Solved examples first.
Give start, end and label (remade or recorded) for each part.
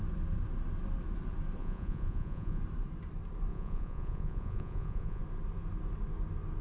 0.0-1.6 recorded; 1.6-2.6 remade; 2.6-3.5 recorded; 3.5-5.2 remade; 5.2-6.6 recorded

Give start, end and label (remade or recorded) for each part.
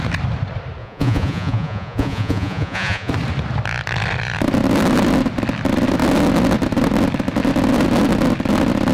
0.0-0.8 recorded; 0.8-3.1 remade; 3.1-8.9 recorded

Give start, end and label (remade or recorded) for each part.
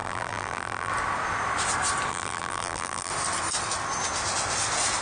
0.0-0.9 remade; 0.9-2.1 recorded; 2.1-3.1 remade; 3.1-5.0 recorded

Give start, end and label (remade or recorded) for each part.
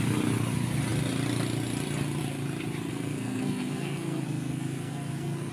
0.0-2.9 recorded; 2.9-5.5 remade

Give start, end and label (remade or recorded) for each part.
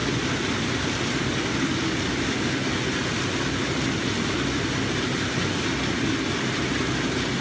0.0-7.4 recorded